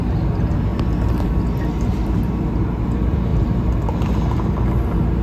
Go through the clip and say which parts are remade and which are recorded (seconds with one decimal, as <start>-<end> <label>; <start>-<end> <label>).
0.0-5.2 recorded